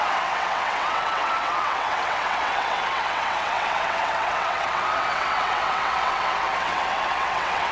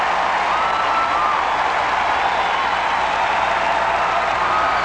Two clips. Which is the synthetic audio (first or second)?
first